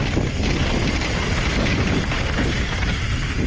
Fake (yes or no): no